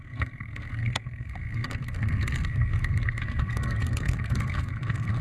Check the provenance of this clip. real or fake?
fake